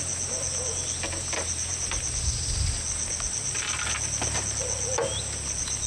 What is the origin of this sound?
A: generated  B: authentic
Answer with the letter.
B